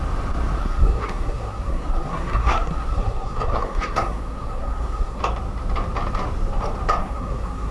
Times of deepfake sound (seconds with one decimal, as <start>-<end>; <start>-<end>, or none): 0.6-5.2; 7.0-7.7